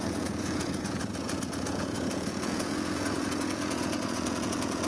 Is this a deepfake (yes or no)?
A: yes